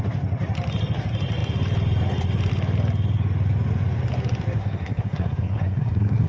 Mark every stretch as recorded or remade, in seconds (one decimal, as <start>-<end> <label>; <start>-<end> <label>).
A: 0.0-4.6 recorded; 4.6-6.3 remade